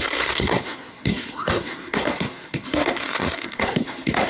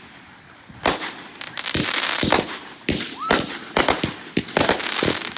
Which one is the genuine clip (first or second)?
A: second